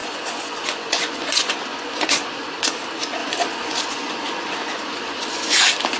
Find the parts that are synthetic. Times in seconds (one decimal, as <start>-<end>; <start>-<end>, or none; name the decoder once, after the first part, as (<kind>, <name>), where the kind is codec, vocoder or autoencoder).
0.0-2.6 (vocoder, Vocos); 3.2-5.6